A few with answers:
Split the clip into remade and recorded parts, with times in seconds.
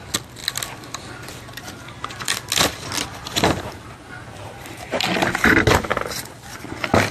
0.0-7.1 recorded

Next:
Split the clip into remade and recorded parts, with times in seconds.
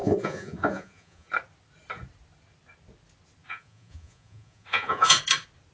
0.0-1.3 remade; 1.3-3.4 recorded; 3.4-5.2 remade; 5.2-5.7 recorded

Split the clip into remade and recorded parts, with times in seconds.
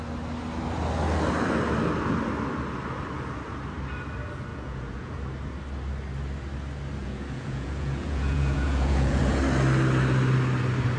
0.0-4.5 recorded; 4.5-5.2 remade; 5.2-7.0 recorded; 7.0-9.4 remade; 9.4-11.0 recorded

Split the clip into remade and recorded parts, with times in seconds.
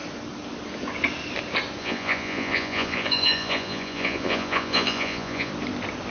0.0-1.8 recorded; 1.8-5.5 remade; 5.5-6.1 recorded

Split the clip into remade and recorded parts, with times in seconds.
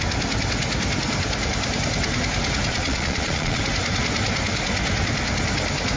0.0-2.7 recorded; 2.7-3.6 remade; 3.6-6.0 recorded